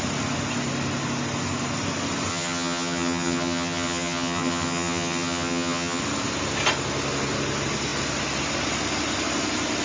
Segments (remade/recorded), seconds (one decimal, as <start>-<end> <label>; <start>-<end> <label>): 0.0-2.3 recorded; 2.3-6.0 remade; 6.0-9.8 recorded